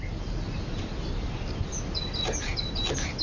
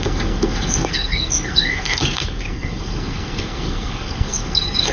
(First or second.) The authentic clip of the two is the first